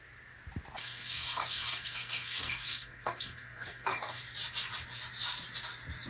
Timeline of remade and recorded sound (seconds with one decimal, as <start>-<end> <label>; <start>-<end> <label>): 0.0-0.8 recorded; 0.8-4.2 remade; 4.2-6.1 recorded